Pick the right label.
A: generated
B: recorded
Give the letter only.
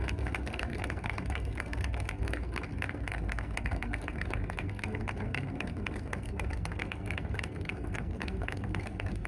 A